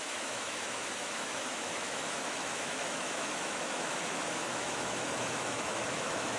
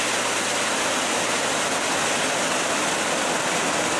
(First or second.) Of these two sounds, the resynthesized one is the first